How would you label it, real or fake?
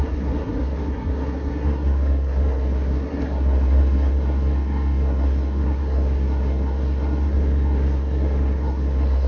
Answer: fake